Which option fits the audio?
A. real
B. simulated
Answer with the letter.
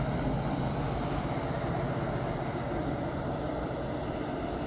A